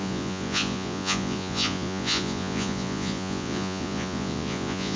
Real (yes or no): no